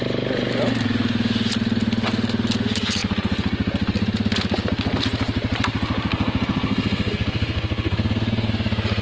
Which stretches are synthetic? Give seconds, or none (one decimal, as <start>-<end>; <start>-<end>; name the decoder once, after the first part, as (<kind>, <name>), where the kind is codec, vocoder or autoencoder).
6.1-8.5 (codec, SNAC)